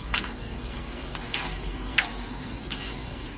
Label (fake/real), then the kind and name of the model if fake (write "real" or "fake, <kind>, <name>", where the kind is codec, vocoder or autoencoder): fake, codec, SNAC